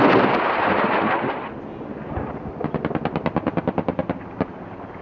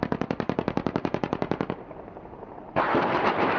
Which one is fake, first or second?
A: second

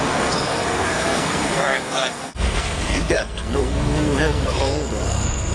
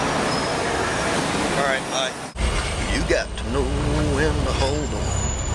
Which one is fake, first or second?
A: first